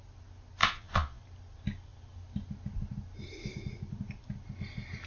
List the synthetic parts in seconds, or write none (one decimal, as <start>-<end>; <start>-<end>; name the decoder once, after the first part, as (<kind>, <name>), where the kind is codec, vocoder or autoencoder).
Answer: 0.6-1.2 (vocoder, Vocos)